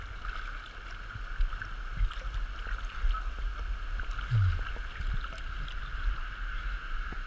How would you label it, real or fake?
real